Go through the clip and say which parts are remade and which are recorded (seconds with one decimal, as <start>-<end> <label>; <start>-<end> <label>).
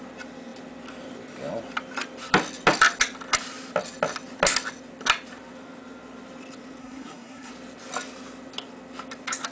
0.0-6.8 recorded; 6.8-7.5 remade; 7.5-9.5 recorded